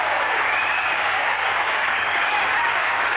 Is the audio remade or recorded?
remade